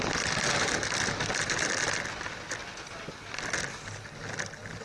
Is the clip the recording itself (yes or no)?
yes